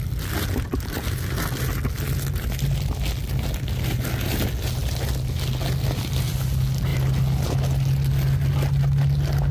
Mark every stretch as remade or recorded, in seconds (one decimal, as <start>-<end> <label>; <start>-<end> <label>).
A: 0.0-9.5 recorded

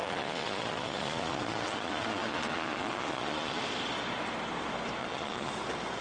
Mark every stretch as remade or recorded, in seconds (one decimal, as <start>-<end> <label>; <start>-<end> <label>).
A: 0.0-3.6 remade; 3.6-5.0 recorded; 5.0-5.5 remade; 5.5-6.0 recorded

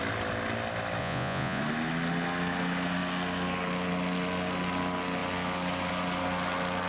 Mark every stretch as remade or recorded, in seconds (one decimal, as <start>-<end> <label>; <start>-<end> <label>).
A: 0.0-1.0 recorded; 1.0-1.6 remade; 1.6-6.9 recorded

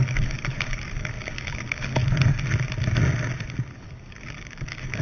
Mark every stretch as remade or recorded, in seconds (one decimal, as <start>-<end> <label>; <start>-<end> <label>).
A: 0.0-2.0 remade; 2.0-3.7 recorded; 3.7-5.0 remade

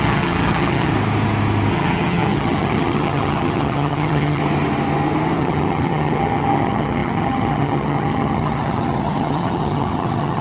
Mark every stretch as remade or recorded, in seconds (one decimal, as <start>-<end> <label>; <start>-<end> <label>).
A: 0.0-0.9 remade; 0.9-1.7 recorded; 1.7-4.4 remade; 4.4-5.4 recorded; 5.4-10.4 remade

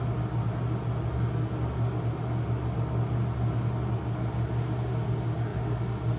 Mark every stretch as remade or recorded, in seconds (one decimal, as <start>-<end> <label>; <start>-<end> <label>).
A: 0.0-6.2 recorded

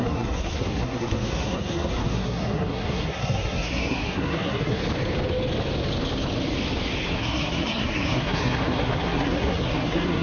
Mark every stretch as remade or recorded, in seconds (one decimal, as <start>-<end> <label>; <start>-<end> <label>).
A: 0.0-4.8 remade; 4.8-7.1 recorded; 7.1-10.2 remade

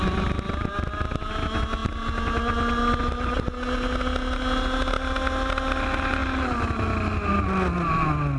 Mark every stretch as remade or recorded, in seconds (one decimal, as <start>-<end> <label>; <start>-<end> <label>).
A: 0.0-8.4 recorded